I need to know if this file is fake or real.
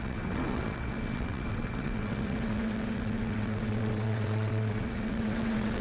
fake